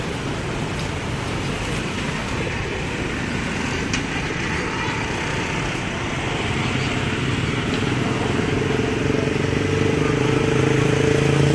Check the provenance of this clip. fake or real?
real